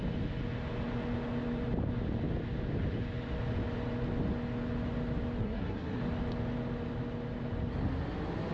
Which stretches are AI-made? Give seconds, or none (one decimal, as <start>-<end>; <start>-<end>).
5.4-6.0